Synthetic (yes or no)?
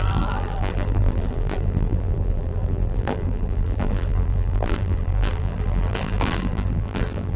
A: yes